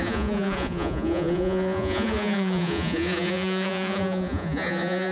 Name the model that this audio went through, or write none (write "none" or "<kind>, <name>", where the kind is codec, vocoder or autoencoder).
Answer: vocoder, Vocos